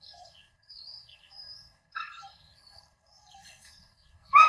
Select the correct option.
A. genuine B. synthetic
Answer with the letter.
B